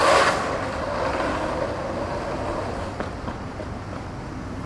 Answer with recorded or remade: recorded